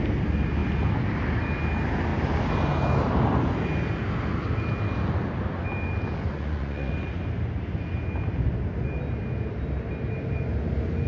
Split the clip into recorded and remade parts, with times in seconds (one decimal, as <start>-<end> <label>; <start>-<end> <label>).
0.0-6.3 recorded; 6.3-6.9 remade; 6.9-11.1 recorded